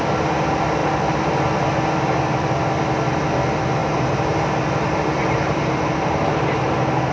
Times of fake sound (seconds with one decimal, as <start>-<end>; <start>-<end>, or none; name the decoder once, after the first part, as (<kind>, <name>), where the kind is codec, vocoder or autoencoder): 0.8-1.6 (vocoder, BigVGAN v2); 3.8-7.1